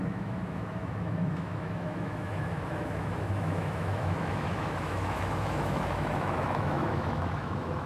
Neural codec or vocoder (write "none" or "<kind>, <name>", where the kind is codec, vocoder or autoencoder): autoencoder, DAC-VAE